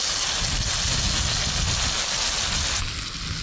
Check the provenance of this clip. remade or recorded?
recorded